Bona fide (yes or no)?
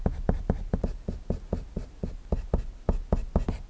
yes